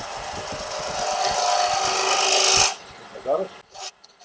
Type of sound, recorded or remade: recorded